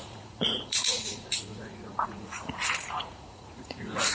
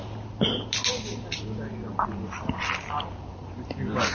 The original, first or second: second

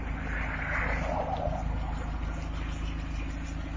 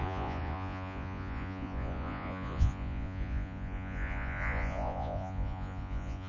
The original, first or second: first